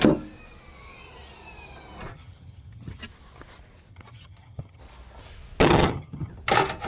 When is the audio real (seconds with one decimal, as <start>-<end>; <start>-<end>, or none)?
0.0-2.1; 3.0-3.9; 4.8-5.6; 6.3-6.9